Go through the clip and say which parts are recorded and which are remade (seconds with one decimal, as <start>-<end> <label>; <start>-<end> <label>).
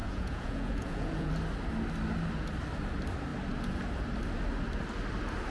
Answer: 0.0-1.3 remade; 1.3-5.5 recorded